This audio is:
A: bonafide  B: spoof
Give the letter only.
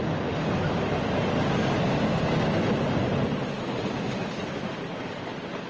A